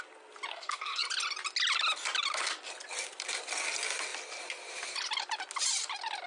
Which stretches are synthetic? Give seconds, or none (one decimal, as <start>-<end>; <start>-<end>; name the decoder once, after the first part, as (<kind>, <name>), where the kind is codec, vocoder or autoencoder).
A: 0.5-1.1 (codec, SNAC)